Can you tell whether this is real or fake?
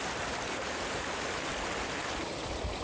real